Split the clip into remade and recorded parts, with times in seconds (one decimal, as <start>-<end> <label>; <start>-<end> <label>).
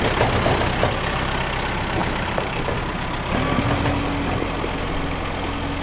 0.0-2.0 recorded; 2.0-2.8 remade; 2.8-5.8 recorded